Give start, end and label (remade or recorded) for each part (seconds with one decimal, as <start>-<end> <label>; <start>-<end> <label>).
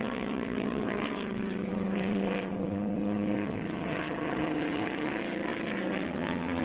0.0-6.6 remade